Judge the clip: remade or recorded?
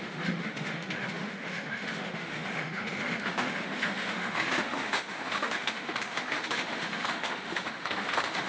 remade